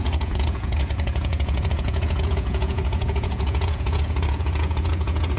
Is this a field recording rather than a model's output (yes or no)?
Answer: no